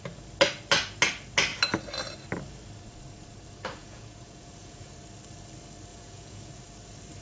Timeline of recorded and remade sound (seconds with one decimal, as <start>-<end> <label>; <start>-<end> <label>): 0.0-3.8 recorded; 3.8-4.9 remade; 4.9-5.9 recorded; 5.9-6.5 remade; 6.5-7.2 recorded